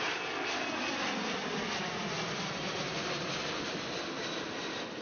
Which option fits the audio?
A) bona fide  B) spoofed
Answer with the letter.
A